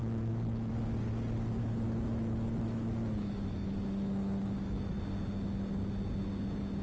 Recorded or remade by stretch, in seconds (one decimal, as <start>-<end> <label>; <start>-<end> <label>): 0.0-0.7 remade; 0.7-1.6 recorded; 1.6-5.0 remade; 5.0-6.8 recorded